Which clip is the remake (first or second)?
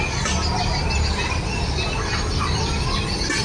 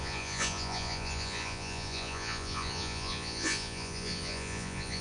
second